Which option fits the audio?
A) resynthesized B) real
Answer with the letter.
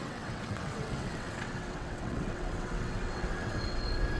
A